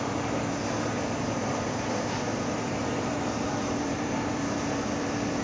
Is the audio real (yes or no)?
no